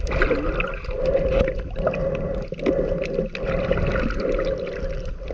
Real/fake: real